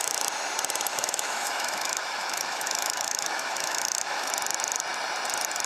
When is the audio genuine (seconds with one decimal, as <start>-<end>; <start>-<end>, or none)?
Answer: 0.0-0.9; 4.3-5.7